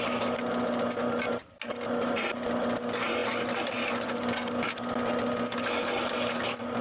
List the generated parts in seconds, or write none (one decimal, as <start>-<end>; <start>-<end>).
none